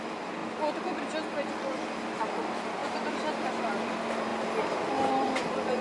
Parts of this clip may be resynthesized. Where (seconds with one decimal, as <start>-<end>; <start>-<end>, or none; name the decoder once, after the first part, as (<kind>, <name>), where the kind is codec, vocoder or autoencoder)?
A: 0.0-0.4 (vocoder, BigVGAN v2); 1.5-2.8; 3.5-4.3; 5.1-5.8